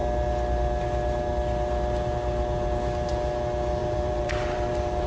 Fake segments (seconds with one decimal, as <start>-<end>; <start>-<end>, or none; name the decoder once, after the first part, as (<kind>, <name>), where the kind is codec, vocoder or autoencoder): 3.8-5.1 (vocoder, BigVGAN v2)